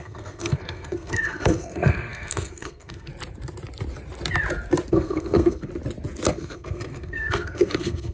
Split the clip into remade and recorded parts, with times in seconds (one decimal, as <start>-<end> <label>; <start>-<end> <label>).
0.0-3.1 remade; 3.1-4.9 recorded; 4.9-5.7 remade; 5.7-6.3 recorded; 6.3-8.1 remade